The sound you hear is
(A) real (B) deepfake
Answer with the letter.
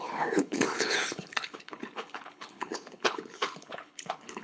B